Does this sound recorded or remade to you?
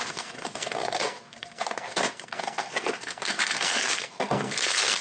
remade